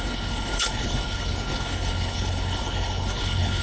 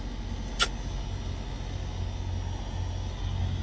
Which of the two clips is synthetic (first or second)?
first